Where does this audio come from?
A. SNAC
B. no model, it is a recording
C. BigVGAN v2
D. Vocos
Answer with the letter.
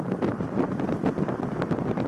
B